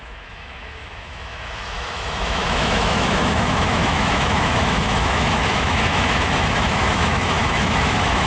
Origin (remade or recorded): remade